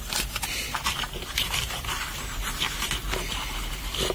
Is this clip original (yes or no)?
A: no